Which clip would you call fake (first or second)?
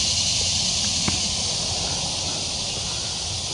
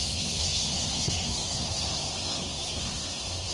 second